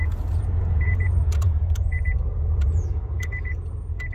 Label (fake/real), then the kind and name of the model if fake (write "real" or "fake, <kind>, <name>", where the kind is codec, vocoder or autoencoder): fake, vocoder, Vocos